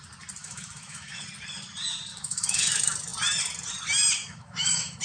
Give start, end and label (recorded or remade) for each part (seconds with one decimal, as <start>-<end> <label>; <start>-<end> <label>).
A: 0.0-0.4 recorded; 0.4-1.2 remade; 1.2-2.1 recorded; 2.1-2.7 remade; 2.7-4.2 recorded; 4.2-5.0 remade